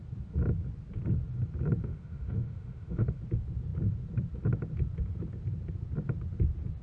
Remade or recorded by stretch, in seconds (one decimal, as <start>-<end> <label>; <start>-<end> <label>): 0.0-1.8 recorded; 1.8-3.2 remade; 3.2-6.8 recorded